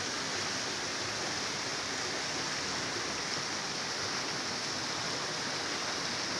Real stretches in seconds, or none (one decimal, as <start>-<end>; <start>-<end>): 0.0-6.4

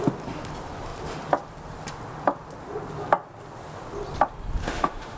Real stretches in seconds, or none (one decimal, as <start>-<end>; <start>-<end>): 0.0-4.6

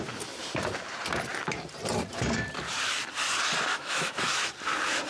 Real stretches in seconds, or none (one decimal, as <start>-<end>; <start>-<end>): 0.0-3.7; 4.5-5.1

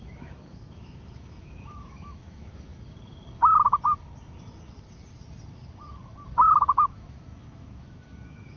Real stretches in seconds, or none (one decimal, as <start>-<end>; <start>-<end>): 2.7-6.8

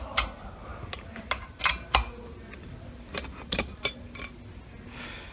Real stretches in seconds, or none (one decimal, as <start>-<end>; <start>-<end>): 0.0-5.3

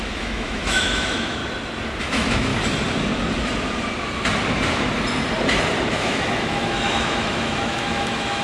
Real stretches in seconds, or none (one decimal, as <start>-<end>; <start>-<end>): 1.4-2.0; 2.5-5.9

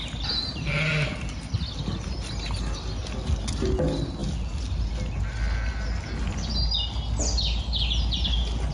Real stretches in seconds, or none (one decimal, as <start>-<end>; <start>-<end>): 0.0-8.7

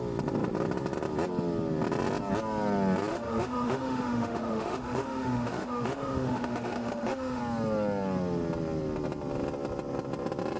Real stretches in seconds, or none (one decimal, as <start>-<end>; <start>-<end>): 0.0-3.1; 7.4-10.6